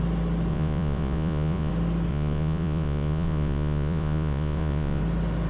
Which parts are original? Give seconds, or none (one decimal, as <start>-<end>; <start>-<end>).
0.0-0.5; 1.7-2.1; 5.0-5.5